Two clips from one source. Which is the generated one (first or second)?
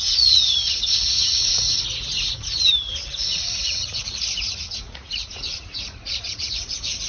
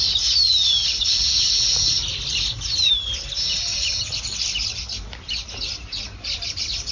first